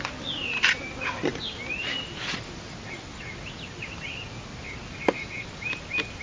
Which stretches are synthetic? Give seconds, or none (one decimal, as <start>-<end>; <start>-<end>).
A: none